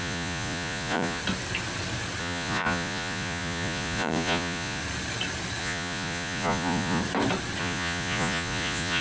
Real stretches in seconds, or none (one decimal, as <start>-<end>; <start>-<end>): 1.2-2.2; 4.8-5.6; 7.0-7.6